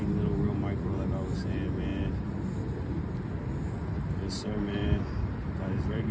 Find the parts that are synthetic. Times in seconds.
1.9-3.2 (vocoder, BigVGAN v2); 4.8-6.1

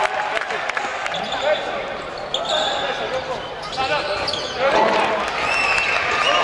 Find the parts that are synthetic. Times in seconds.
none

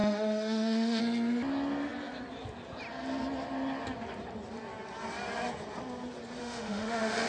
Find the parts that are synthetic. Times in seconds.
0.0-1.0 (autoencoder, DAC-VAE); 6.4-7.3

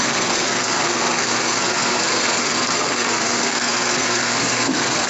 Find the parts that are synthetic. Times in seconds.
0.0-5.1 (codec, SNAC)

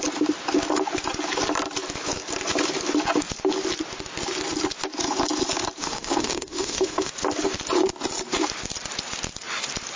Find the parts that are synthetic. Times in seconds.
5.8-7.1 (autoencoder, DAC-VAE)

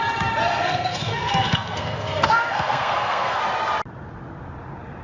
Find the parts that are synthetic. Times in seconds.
0.4-3.4 (codec, SNAC)

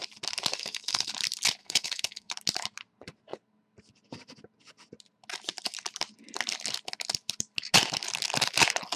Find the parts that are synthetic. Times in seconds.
0.5-1.1 (codec, SNAC); 1.6-2.3